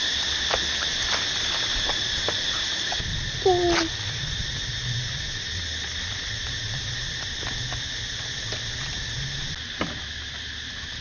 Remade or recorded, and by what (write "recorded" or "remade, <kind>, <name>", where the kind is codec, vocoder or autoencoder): recorded